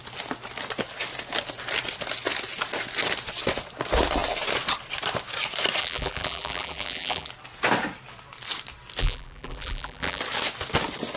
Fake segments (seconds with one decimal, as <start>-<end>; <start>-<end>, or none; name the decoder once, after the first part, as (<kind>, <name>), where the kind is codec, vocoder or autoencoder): 5.8-7.3 (vocoder, BigVGAN v2); 9.0-10.2